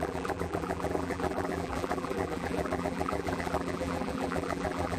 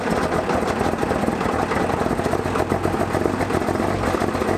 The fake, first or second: first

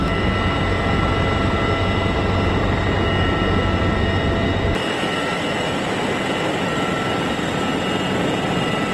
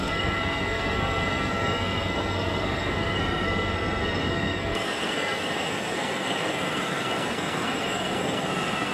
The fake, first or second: second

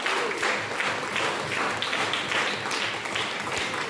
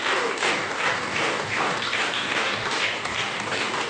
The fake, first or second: second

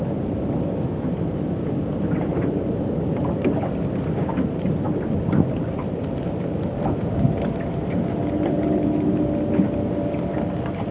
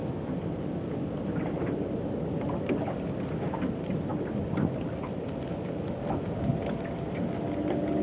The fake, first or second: first